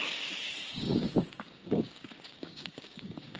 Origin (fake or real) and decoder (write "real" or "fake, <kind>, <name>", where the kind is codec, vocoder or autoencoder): fake, codec, DAC